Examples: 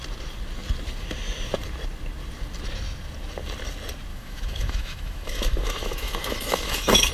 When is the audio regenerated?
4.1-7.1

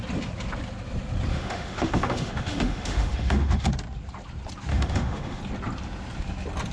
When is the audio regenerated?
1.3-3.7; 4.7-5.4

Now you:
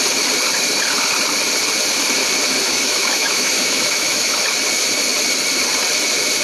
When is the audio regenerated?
2.7-4.4

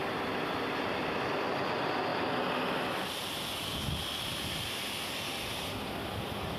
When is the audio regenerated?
none

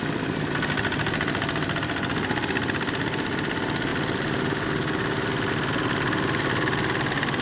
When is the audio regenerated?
none

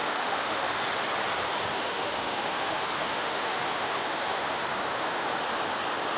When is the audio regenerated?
0.0-0.8; 1.7-5.4

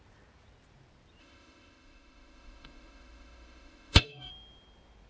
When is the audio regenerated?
1.2-4.3